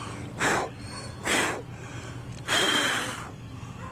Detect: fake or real real